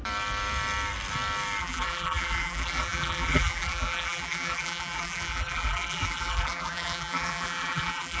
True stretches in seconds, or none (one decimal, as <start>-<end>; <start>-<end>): 0.0-1.6